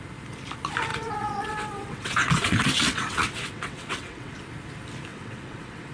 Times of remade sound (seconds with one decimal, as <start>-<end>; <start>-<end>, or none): 0.9-4.4; 5.1-5.9